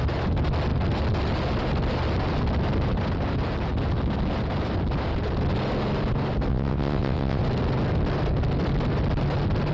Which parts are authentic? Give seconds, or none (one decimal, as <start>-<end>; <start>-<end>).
0.0-6.5; 7.4-9.7